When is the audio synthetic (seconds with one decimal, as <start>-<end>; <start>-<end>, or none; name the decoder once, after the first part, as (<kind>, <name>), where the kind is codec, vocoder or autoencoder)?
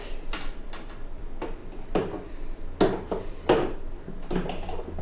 none